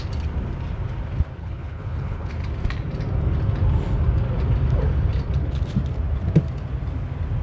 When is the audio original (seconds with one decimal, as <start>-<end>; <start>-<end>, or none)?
0.0-1.4; 2.3-7.4

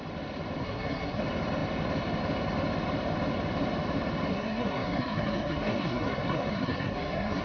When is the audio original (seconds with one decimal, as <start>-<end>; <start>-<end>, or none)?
0.0-0.6; 1.2-4.3

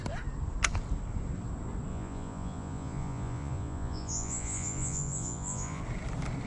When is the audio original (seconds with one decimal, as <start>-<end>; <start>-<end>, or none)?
0.0-1.9; 5.8-6.5

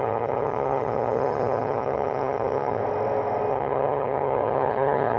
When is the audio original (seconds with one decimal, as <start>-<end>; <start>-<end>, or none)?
2.8-3.5

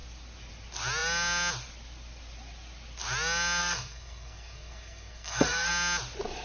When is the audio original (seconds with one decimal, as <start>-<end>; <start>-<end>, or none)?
0.0-3.6; 5.7-6.4

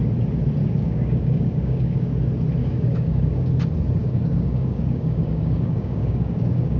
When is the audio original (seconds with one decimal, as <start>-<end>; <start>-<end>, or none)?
0.0-0.6; 2.2-2.6; 3.5-4.0

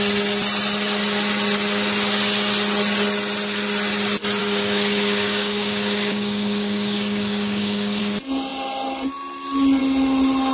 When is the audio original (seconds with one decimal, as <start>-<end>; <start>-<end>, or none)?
0.0-4.4; 8.0-10.5

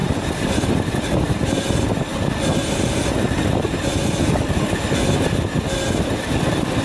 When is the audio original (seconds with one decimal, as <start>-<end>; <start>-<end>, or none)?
0.0-6.8